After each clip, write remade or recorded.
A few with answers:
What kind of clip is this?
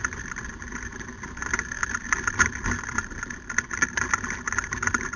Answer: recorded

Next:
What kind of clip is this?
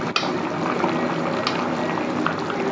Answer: recorded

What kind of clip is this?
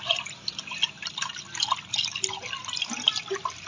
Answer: recorded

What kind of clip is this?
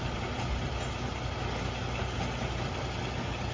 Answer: recorded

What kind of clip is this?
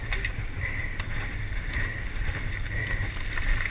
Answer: recorded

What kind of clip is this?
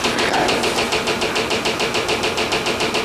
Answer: recorded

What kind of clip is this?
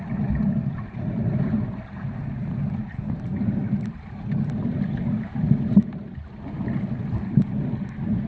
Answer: recorded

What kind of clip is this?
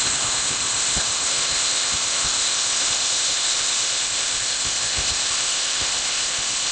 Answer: remade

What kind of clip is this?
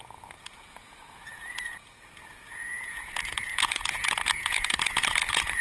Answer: remade